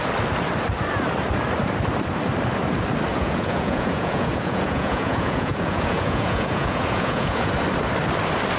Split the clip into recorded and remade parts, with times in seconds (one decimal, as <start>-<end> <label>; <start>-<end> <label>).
0.0-3.1 recorded; 3.1-7.5 remade; 7.5-8.6 recorded